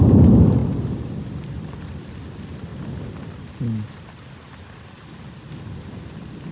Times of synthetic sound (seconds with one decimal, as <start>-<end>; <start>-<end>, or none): 2.7-3.5